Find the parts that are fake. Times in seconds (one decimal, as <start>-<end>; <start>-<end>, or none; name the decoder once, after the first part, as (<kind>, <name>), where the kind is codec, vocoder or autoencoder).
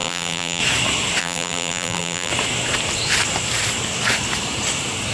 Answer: 0.0-0.6 (vocoder, BigVGAN v2); 1.2-2.3